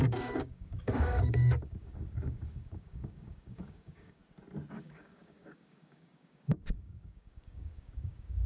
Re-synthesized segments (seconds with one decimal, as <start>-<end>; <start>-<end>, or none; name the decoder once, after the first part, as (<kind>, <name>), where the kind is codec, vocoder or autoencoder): 0.0-4.2 (codec, DAC); 4.7-8.5